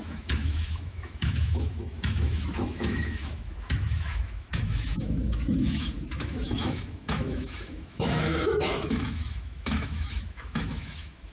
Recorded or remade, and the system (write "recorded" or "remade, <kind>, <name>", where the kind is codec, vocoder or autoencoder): remade, autoencoder, DAC-VAE